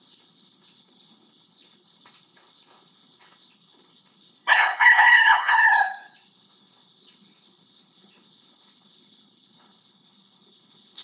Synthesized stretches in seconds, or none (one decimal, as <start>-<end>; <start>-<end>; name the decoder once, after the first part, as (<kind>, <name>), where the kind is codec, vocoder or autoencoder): 0.0-11.0 (codec, HILCodec)